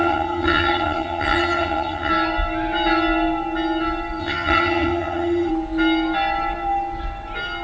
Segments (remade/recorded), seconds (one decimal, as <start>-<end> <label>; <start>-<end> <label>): 0.0-2.1 remade; 2.1-4.2 recorded; 4.2-5.5 remade; 5.5-7.6 recorded